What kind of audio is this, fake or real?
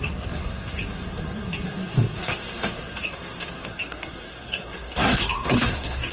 fake